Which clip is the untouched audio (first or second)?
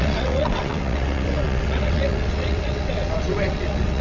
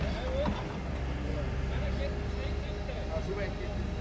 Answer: second